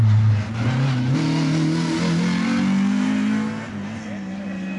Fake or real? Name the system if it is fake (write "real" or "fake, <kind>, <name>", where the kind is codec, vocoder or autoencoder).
real